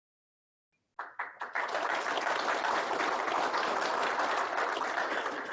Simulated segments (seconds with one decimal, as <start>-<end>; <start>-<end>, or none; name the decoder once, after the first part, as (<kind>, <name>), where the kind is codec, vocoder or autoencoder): none